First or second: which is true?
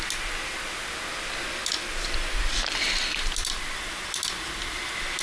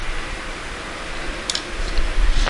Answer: first